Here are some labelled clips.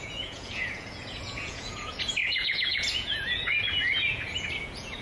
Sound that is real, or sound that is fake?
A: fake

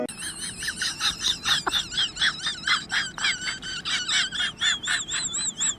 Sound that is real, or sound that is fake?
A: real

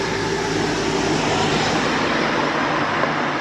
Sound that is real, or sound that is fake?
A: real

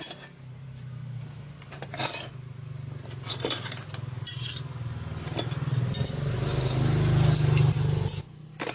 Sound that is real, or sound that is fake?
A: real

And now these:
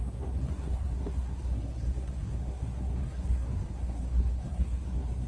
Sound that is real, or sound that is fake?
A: fake